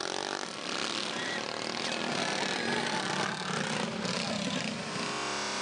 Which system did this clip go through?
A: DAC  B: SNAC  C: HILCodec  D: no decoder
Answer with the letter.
D